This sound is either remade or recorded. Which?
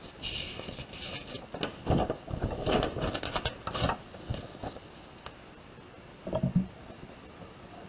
recorded